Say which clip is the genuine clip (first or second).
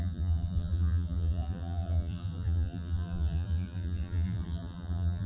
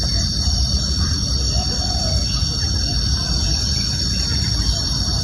second